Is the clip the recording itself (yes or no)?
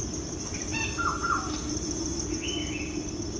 yes